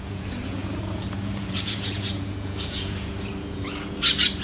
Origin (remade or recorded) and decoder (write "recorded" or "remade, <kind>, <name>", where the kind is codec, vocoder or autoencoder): remade, vocoder, Vocos